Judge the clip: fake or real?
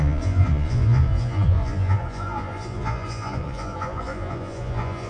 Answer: fake